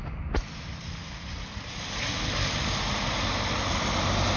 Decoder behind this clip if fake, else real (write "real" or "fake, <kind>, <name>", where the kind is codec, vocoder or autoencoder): real